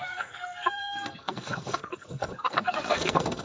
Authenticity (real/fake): fake